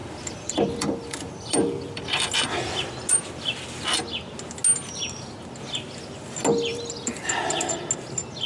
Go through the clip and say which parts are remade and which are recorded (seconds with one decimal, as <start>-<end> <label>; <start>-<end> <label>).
0.0-2.0 remade; 2.0-6.7 recorded; 6.7-7.8 remade; 7.8-8.5 recorded